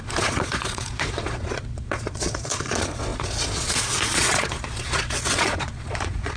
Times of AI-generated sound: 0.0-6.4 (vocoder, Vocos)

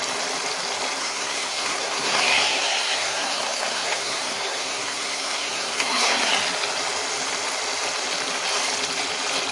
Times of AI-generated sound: 1.0-6.3 (codec, SNAC)

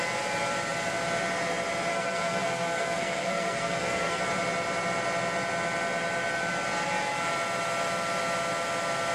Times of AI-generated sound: 1.9-4.2 (codec, SNAC)

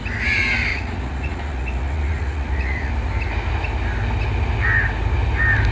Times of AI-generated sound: 0.7-2.9 (vocoder, Vocos)

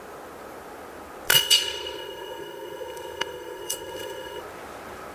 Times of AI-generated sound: 1.3-4.4 (codec, SNAC)